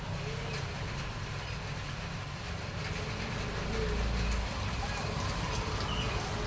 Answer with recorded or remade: recorded